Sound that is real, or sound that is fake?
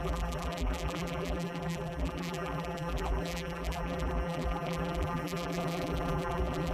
fake